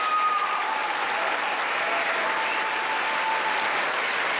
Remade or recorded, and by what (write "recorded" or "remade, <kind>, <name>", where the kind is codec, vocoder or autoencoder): recorded